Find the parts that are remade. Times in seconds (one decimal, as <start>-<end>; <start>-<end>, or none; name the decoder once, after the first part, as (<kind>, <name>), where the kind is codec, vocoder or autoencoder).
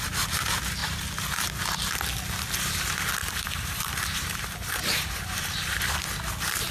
3.2-5.8 (vocoder, BigVGAN v2)